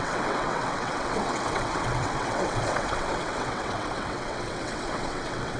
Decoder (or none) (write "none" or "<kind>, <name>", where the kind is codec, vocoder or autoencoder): vocoder, WaveNeXt